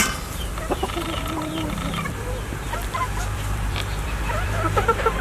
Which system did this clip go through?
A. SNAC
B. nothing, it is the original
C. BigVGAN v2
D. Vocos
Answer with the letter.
C